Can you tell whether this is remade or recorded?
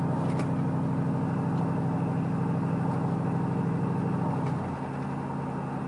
recorded